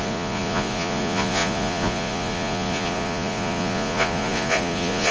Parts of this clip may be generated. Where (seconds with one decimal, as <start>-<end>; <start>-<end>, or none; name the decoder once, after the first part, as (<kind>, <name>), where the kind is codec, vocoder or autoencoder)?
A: 0.0-5.1 (vocoder, Vocos)